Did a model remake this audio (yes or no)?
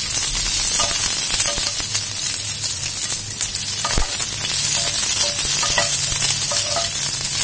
no